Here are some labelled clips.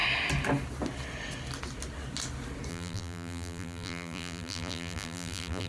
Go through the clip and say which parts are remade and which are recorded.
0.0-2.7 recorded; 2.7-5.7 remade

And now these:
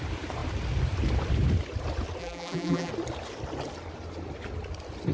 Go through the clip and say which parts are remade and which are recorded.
0.0-2.2 recorded; 2.2-2.9 remade; 2.9-5.1 recorded

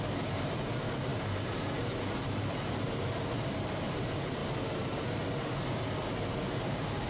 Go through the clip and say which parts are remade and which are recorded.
0.0-4.4 remade; 4.4-6.0 recorded; 6.0-7.1 remade

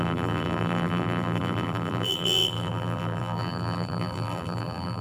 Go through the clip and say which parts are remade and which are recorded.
0.0-5.0 remade

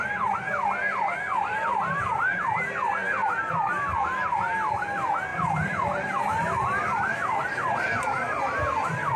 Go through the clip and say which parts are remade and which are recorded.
0.0-5.3 recorded; 5.3-8.4 remade; 8.4-9.2 recorded

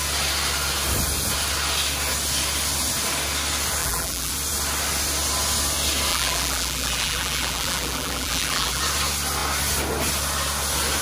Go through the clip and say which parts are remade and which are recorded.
0.0-3.8 recorded; 3.8-4.3 remade; 4.3-6.1 recorded; 6.1-8.8 remade; 8.8-11.0 recorded

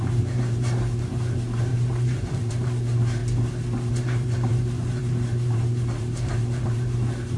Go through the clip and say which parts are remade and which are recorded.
0.0-3.2 remade; 3.2-3.9 recorded; 3.9-7.4 remade

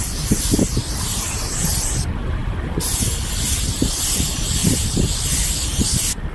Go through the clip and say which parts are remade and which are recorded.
0.0-0.8 recorded; 0.8-1.5 remade; 1.5-4.6 recorded; 4.6-5.2 remade; 5.2-6.3 recorded